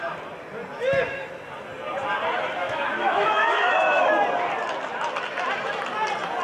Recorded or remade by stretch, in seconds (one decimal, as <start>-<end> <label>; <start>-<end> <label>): 0.0-2.6 recorded; 2.6-4.1 remade; 4.1-6.4 recorded